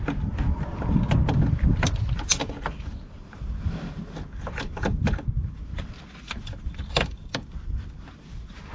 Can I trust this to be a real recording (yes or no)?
yes